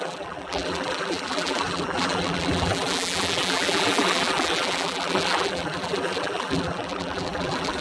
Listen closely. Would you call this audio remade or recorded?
remade